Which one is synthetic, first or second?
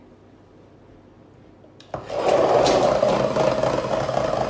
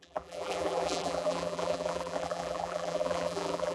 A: second